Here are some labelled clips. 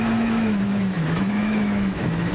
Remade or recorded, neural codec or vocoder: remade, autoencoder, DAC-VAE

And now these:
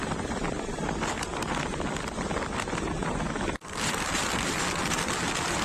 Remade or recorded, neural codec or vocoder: remade, vocoder, BigVGAN v2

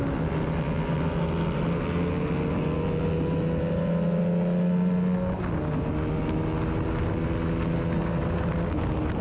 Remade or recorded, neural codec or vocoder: recorded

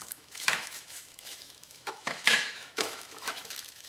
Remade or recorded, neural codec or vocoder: remade, autoencoder, DAC-VAE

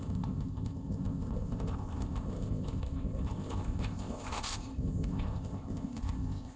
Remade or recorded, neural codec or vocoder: remade, codec, ZipCodec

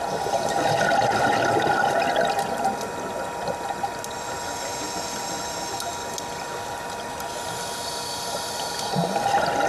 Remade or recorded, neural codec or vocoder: recorded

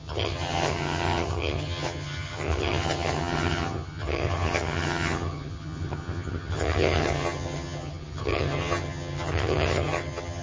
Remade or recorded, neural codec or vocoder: remade, vocoder, HiFi-GAN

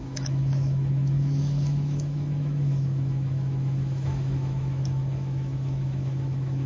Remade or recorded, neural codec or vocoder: remade, autoencoder, DAC-VAE